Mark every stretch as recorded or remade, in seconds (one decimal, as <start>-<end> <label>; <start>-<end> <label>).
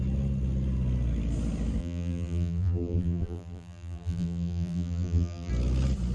0.0-1.8 recorded; 1.8-5.5 remade; 5.5-6.1 recorded